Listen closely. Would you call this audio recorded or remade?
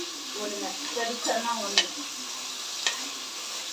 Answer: recorded